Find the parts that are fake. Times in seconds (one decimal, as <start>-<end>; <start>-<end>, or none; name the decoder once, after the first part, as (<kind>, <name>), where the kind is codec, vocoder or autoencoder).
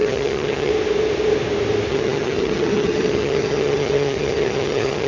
0.0-0.7 (vocoder, HiFi-GAN); 1.9-5.1